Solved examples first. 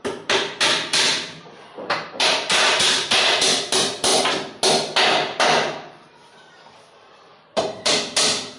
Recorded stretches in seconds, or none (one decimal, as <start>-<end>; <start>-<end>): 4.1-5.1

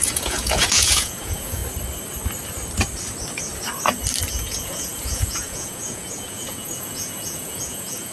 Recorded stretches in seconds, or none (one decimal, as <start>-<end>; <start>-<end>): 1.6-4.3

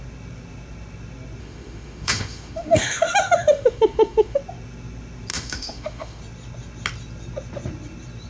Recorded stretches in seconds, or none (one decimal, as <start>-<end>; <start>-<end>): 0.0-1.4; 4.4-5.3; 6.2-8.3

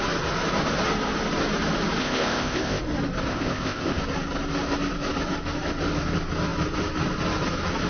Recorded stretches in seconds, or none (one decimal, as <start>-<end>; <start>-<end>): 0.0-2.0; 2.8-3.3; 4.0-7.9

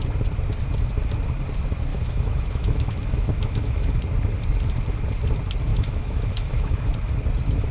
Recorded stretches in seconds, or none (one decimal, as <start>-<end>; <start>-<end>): 0.0-1.9; 4.0-5.7; 6.9-7.7

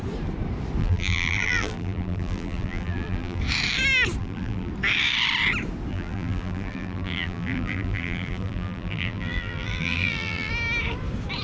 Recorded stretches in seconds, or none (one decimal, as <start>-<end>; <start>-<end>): 0.0-0.8; 3.4-4.2; 4.7-5.9; 10.5-11.4

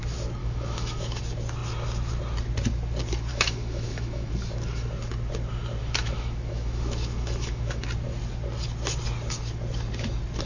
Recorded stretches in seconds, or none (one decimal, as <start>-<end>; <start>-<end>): 0.0-0.4; 1.2-3.3; 4.3-5.8; 7.8-10.5